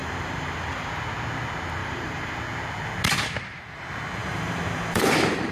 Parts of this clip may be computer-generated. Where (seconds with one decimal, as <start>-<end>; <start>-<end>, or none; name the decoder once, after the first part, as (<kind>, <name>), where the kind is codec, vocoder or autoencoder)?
0.0-0.9 (vocoder, BigVGAN v2); 1.8-2.3; 4.2-5.5